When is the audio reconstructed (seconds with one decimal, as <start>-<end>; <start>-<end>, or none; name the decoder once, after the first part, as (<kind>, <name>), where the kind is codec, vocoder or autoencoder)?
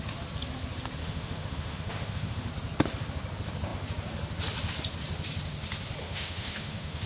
1.0-2.5 (autoencoder, DAC-VAE); 6.0-7.1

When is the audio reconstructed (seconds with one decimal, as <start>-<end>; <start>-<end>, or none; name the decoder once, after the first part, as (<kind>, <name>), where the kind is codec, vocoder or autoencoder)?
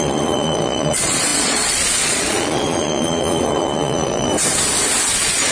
0.0-4.3 (vocoder, Vocos); 5.1-5.5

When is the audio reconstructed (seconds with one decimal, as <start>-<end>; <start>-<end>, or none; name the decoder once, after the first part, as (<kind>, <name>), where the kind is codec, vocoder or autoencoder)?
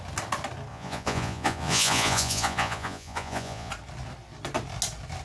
0.7-3.7 (vocoder, Vocos)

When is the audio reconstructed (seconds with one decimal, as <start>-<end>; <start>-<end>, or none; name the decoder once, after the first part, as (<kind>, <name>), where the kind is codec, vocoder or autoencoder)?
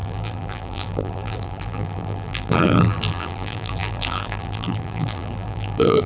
0.0-6.1 (vocoder, BigVGAN v2)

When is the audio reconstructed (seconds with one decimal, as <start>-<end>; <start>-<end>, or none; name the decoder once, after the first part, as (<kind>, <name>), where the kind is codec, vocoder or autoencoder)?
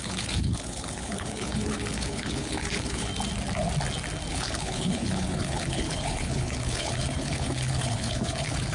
0.0-3.1 (codec, HILCodec); 4.3-8.7